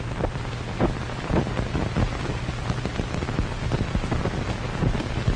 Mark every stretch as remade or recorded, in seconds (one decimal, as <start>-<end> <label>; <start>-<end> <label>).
0.0-1.8 remade; 1.8-5.0 recorded; 5.0-5.4 remade